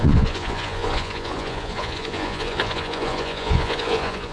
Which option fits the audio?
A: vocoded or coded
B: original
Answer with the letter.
A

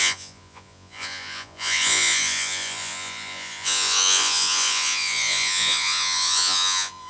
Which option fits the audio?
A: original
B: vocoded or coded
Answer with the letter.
B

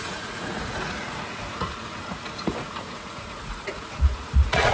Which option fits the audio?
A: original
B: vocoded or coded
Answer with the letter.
B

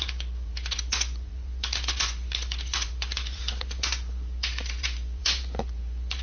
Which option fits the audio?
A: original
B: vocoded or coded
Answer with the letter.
B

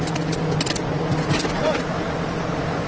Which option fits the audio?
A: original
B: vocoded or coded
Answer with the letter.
A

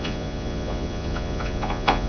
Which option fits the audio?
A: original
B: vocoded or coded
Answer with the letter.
B